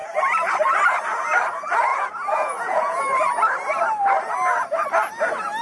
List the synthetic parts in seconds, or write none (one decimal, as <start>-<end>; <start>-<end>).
0.0-0.5; 1.9-3.0